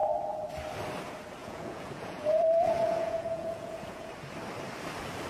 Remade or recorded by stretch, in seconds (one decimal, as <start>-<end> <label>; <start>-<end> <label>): 0.0-1.4 recorded; 1.4-4.1 remade; 4.1-5.3 recorded